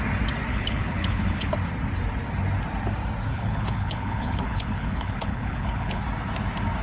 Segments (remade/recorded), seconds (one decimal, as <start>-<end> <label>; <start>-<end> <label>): 0.0-0.5 recorded; 0.5-1.5 remade; 1.5-3.3 recorded; 3.3-6.0 remade; 6.0-6.8 recorded